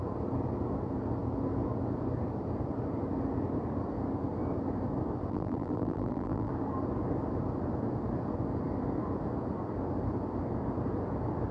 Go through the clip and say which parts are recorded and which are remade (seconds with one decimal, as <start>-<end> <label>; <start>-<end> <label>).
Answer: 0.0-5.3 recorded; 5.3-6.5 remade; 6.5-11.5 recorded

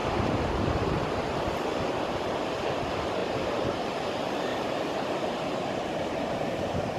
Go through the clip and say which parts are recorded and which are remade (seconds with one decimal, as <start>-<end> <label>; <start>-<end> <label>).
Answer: 0.0-1.7 recorded; 1.7-2.5 remade; 2.5-3.2 recorded; 3.2-3.9 remade; 3.9-4.5 recorded; 4.5-7.0 remade

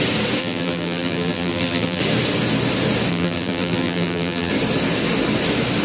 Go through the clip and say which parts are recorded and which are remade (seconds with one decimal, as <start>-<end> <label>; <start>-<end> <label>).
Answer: 0.0-0.4 recorded; 0.4-2.0 remade; 2.0-3.1 recorded; 3.1-4.5 remade; 4.5-5.8 recorded